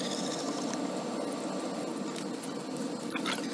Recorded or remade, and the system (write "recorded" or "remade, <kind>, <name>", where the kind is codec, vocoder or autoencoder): recorded